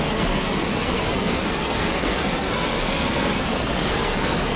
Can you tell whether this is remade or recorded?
remade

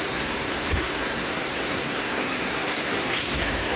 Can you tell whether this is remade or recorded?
remade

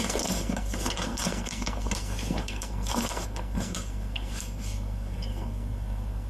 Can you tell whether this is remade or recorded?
remade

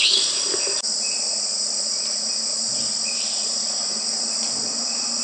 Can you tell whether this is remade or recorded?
recorded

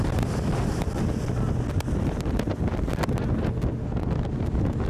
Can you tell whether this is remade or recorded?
recorded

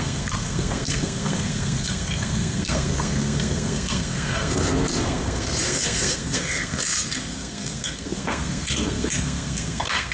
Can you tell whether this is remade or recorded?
remade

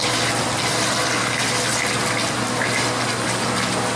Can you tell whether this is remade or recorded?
recorded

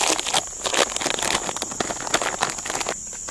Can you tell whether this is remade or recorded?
recorded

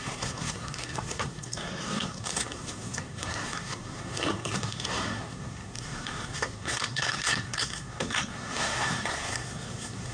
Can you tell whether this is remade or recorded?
remade